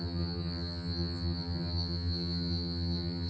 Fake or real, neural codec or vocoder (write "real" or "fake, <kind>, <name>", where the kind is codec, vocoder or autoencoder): fake, vocoder, HiFi-GAN